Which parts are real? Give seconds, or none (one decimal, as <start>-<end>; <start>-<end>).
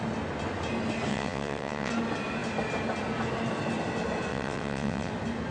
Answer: 0.0-1.1; 1.9-4.3; 5.1-5.5